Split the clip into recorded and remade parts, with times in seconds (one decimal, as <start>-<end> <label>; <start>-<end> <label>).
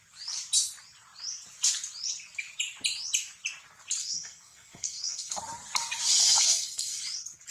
0.0-4.0 recorded; 4.0-5.4 remade; 5.4-6.2 recorded; 6.2-7.0 remade; 7.0-7.5 recorded